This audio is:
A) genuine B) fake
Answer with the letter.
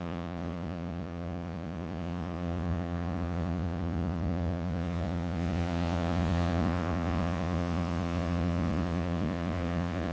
B